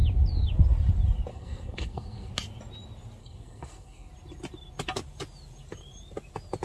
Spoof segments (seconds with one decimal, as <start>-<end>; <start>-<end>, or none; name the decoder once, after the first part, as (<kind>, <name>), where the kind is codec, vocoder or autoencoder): 1.3-2.3 (codec, SNAC); 3.2-4.1